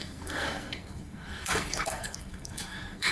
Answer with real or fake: fake